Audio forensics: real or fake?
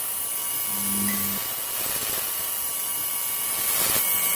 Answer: real